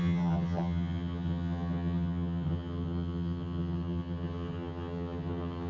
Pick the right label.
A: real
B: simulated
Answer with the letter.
B